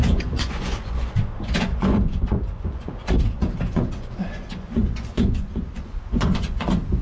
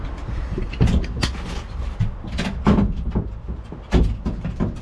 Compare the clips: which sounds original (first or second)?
second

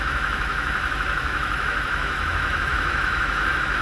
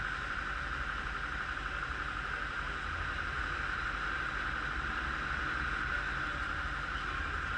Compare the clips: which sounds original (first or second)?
second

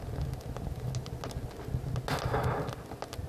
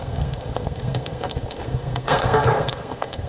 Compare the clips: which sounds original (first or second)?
first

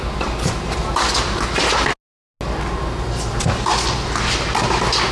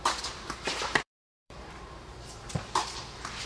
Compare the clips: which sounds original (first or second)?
first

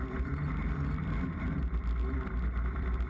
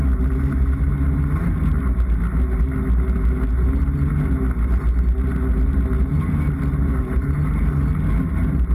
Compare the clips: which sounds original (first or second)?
second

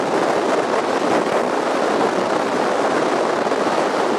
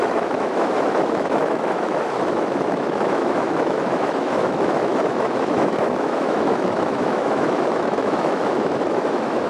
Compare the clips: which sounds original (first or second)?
first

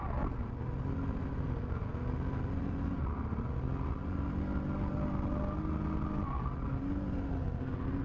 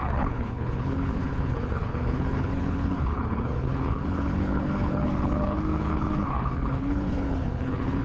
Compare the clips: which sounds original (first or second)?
first